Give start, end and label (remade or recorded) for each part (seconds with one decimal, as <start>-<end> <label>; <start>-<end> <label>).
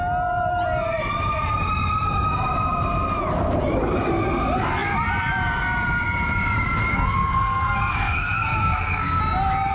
0.0-6.9 recorded; 6.9-9.2 remade; 9.2-9.7 recorded